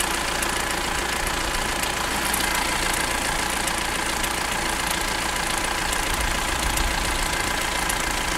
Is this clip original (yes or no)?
yes